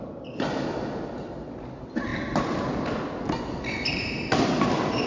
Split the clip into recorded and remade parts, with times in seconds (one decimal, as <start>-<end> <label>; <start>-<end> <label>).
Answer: 0.0-2.1 recorded; 2.1-3.0 remade; 3.0-3.9 recorded; 3.9-5.1 remade